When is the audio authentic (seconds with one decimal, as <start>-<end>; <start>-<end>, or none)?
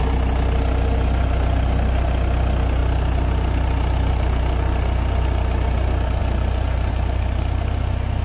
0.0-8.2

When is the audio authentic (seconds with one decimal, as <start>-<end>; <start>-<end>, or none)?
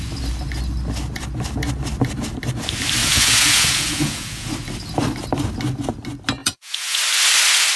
0.0-3.0; 4.5-6.4; 7.0-7.8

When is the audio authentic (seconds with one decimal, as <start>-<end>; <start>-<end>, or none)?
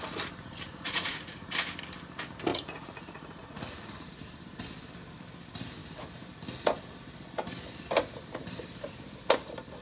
0.0-0.7; 1.5-2.5; 4.2-9.8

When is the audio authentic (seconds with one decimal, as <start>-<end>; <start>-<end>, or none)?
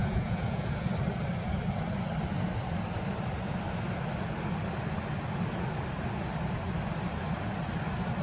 0.9-8.2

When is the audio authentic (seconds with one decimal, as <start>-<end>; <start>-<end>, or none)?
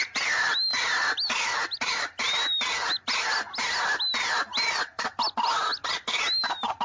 0.0-6.8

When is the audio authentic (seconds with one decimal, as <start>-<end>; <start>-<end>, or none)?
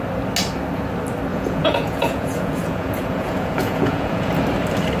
0.0-1.3; 4.3-5.0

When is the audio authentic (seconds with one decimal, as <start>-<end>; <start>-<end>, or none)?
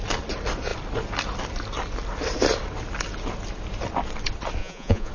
0.0-4.6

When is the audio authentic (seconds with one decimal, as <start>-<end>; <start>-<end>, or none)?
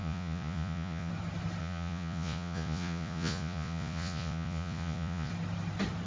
1.1-1.6; 5.3-6.1